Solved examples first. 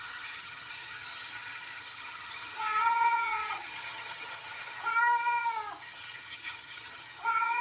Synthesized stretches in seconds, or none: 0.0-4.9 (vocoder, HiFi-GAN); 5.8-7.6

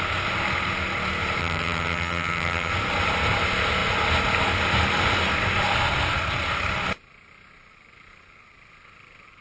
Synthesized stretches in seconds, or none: 1.4-2.7 (vocoder, HiFi-GAN)

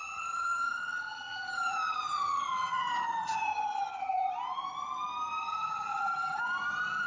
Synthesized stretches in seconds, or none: 0.0-4.3 (vocoder, HiFi-GAN); 5.4-6.4

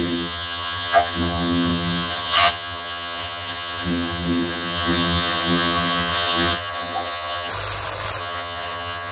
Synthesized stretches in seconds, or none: 0.0-7.5 (vocoder, HiFi-GAN); 8.2-9.1

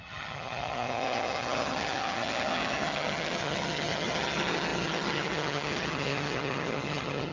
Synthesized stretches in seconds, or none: 0.0-7.3 (vocoder, HiFi-GAN)

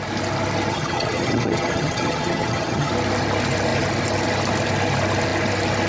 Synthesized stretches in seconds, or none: 0.7-2.9 (vocoder, HiFi-GAN)

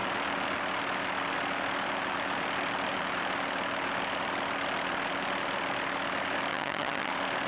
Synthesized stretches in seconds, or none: 6.5-7.1 (vocoder, HiFi-GAN)

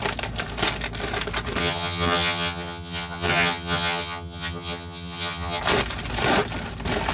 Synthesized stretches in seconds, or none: 1.6-5.6 (vocoder, HiFi-GAN)